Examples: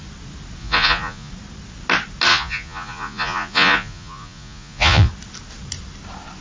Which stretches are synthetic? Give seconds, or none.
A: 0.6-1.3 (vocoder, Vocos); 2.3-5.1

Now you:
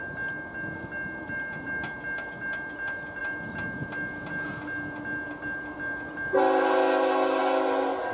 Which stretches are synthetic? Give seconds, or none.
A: none

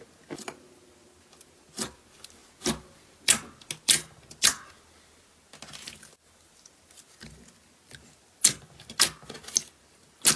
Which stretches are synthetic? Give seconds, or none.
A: none

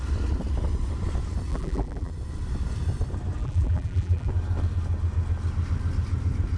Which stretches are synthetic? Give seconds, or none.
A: 1.5-2.1 (vocoder, BigVGAN v2); 3.4-4.3

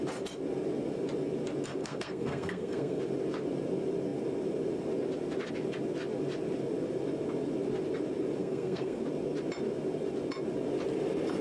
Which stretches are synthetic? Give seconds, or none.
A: 1.8-3.0 (codec, SNAC); 8.4-9.0

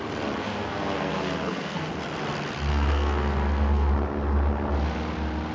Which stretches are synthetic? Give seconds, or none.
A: 0.4-1.9 (codec, SNAC); 2.7-3.9

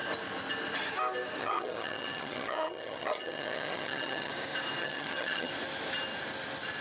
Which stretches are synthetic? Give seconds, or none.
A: 1.4-4.3 (vocoder, HiFi-GAN); 4.8-5.5